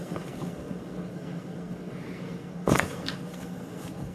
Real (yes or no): no